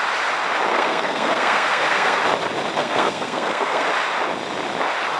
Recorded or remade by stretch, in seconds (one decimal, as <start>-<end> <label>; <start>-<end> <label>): 0.0-0.7 recorded; 0.7-2.2 remade; 2.2-2.8 recorded; 2.8-3.9 remade; 3.9-5.2 recorded